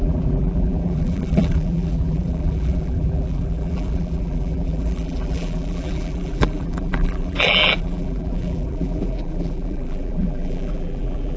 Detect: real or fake fake